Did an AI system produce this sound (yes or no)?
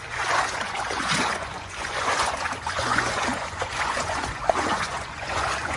yes